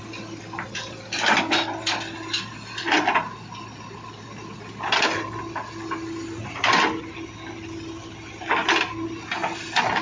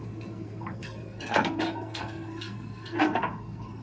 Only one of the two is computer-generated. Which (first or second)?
second